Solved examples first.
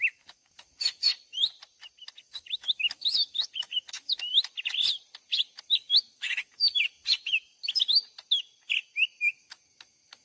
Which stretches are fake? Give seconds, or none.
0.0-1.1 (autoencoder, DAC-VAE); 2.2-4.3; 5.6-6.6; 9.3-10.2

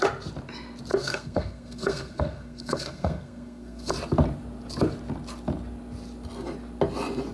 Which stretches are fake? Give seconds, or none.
0.9-3.9 (codec, SNAC)

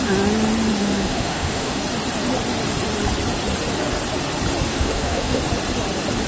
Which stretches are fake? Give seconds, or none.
0.8-1.8 (autoencoder, DAC-VAE); 4.7-5.4

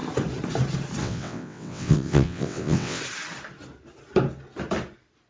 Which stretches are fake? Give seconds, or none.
1.0-3.0 (vocoder, WaveNeXt)

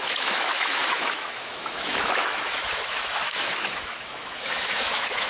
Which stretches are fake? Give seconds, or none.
0.0-5.3 (autoencoder, DAC-VAE)